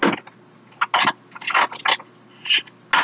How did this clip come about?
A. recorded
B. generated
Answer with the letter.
A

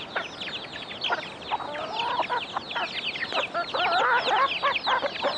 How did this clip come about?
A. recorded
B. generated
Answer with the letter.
A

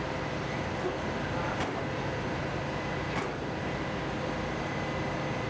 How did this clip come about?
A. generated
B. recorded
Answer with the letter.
B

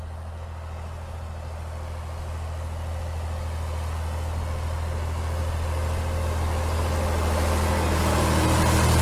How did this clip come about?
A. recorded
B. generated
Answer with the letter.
A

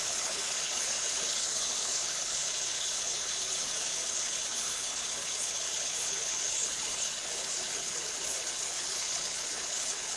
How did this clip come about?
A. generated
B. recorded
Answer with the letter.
A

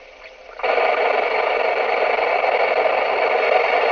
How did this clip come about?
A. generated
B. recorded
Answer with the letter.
A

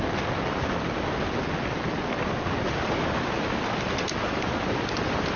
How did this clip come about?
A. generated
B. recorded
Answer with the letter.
B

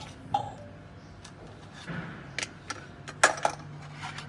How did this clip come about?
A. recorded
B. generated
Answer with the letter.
A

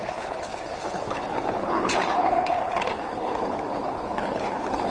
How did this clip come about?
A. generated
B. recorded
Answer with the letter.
A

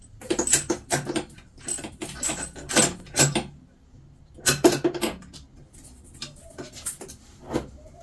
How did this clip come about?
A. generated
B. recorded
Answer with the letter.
B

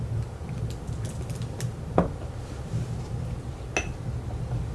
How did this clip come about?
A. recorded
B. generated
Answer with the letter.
A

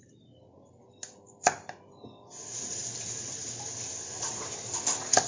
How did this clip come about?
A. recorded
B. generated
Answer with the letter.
A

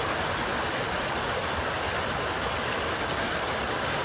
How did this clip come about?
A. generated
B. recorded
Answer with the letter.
B